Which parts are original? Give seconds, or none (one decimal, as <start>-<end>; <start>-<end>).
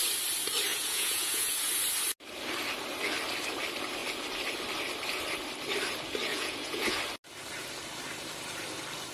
0.0-0.7; 1.7-6.3; 7.0-9.1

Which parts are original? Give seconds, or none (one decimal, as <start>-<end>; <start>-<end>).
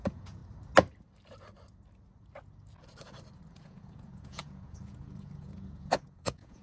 0.4-3.5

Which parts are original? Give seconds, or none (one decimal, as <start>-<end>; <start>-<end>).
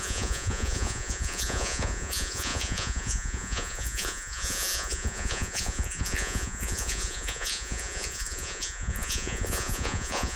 none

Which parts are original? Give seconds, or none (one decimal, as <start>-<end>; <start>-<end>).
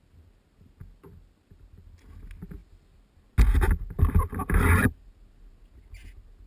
0.0-6.5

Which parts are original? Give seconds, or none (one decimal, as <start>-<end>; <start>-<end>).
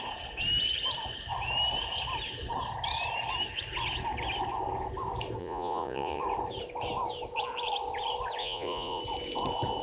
0.0-5.4; 6.2-8.4; 9.0-9.8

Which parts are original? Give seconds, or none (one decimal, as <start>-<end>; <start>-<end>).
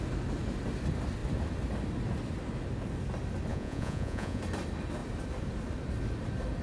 0.0-3.5; 4.4-6.6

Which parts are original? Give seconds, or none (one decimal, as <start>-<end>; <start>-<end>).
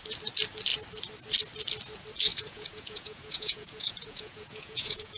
0.0-2.3